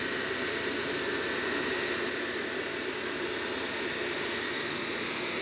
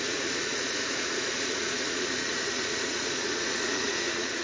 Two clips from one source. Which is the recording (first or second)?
first